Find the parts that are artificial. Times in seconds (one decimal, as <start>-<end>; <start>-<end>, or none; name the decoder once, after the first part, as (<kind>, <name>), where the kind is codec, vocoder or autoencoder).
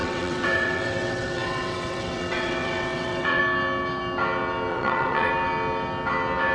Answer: 0.0-3.4 (vocoder, WaveNeXt); 4.7-5.3